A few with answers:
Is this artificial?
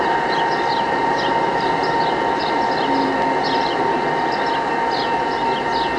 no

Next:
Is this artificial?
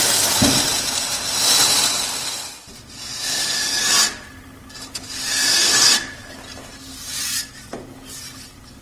no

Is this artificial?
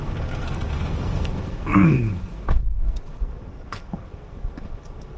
yes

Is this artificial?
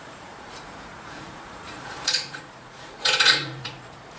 yes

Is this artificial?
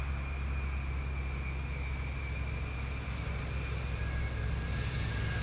no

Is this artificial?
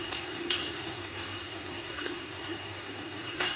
yes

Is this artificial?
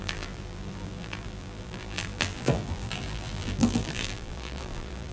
yes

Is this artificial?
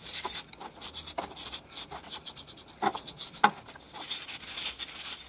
no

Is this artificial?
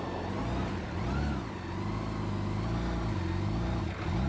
no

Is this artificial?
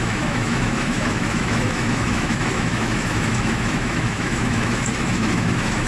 yes